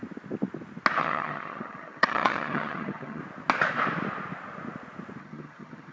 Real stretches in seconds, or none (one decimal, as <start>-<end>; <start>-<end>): 0.0-1.0; 3.2-5.2